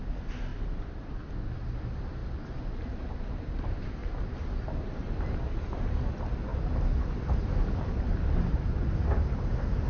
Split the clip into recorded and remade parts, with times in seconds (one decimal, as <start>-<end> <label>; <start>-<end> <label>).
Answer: 0.0-0.5 recorded; 0.5-1.3 remade; 1.3-2.2 recorded; 2.2-2.9 remade; 2.9-4.0 recorded; 4.0-5.9 remade; 5.9-9.9 recorded

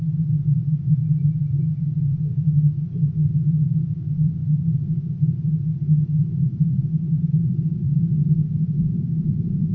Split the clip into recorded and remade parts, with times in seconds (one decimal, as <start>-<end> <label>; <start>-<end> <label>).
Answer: 0.0-9.7 recorded

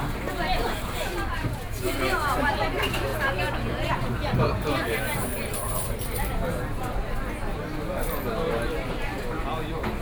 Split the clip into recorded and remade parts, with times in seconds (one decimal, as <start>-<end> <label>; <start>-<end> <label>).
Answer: 0.0-1.9 remade; 1.9-2.5 recorded; 2.5-3.1 remade; 3.1-3.7 recorded; 3.7-5.3 remade; 5.3-10.0 recorded

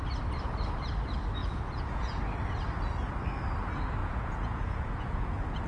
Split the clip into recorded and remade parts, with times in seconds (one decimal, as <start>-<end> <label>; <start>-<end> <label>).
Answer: 0.0-1.4 recorded; 1.4-2.2 remade; 2.2-4.0 recorded; 4.0-5.3 remade; 5.3-5.7 recorded

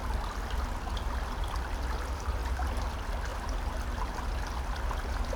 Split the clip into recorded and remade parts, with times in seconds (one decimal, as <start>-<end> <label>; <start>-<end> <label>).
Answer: 0.0-3.3 recorded; 3.3-4.2 remade; 4.2-5.4 recorded